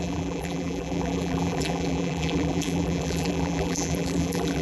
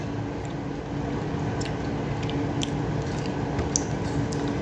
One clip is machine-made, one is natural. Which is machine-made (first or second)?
first